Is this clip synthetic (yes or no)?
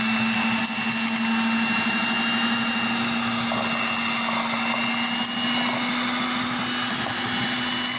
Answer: no